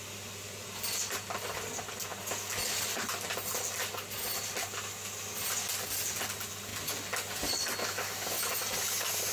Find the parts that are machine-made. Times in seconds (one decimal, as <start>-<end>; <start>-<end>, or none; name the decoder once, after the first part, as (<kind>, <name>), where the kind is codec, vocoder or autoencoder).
none